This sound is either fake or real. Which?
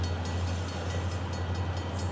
real